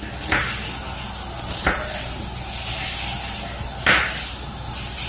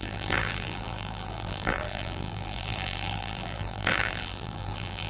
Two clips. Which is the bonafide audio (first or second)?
first